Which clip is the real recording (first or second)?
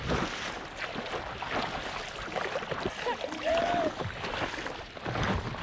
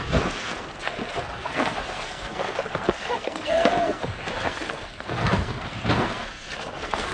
first